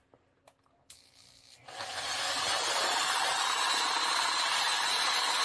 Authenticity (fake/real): real